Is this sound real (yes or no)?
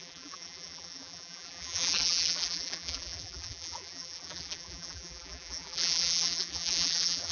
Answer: no